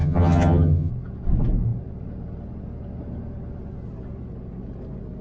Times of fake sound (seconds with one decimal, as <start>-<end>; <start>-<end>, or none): 0.0-0.9